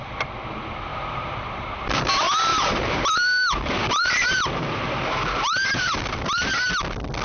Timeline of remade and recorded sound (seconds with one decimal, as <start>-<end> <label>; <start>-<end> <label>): 0.0-0.9 recorded; 0.9-2.1 remade; 2.1-2.5 recorded; 2.5-6.5 remade; 6.5-7.2 recorded